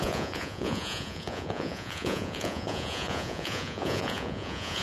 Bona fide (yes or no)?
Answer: no